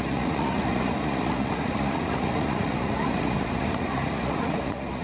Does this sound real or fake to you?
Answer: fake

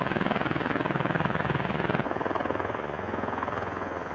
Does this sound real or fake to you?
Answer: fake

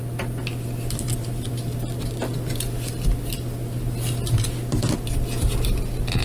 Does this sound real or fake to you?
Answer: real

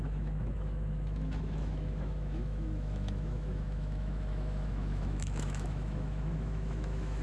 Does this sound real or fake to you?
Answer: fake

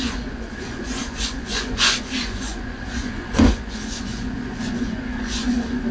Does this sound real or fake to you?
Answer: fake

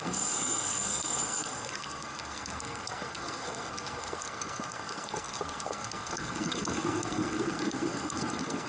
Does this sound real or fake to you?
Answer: fake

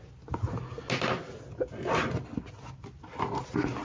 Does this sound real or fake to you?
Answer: real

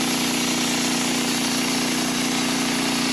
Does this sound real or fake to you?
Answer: real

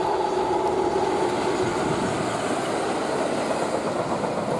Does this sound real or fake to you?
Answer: real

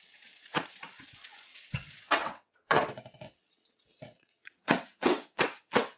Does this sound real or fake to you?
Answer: fake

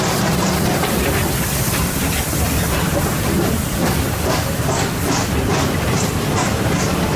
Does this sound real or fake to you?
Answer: fake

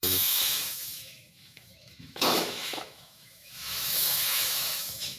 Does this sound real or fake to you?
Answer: fake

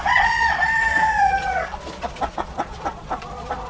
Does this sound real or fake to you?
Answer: fake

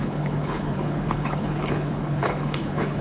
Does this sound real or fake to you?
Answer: fake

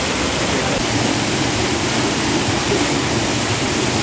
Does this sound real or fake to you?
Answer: real